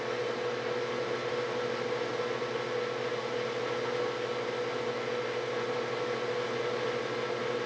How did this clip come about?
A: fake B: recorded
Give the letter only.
B